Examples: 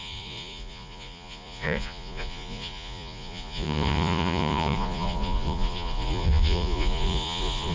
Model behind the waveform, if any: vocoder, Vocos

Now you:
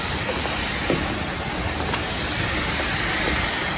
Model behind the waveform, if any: none